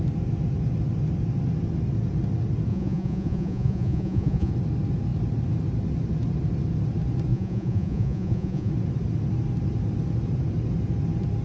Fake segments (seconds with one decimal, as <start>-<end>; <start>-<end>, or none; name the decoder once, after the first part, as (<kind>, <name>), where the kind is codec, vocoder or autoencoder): 2.7-4.5 (vocoder, Vocos); 7.3-8.7